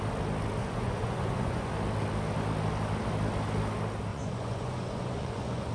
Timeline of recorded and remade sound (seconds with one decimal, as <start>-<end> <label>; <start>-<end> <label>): 0.0-0.6 recorded; 0.6-1.7 remade; 1.7-4.1 recorded; 4.1-5.7 remade